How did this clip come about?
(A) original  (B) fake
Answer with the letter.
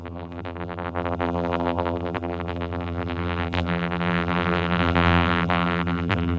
B